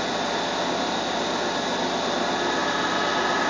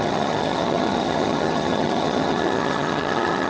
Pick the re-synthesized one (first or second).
second